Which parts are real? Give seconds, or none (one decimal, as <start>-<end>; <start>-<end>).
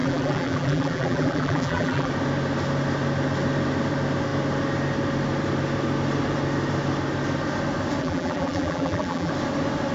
2.1-8.0; 9.3-9.9